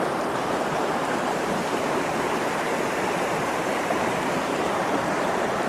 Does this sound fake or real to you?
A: fake